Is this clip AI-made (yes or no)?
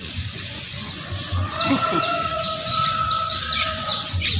yes